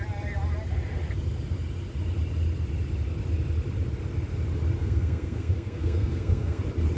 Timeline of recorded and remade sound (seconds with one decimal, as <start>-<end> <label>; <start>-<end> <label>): 0.0-4.8 recorded; 4.8-6.6 remade; 6.6-7.0 recorded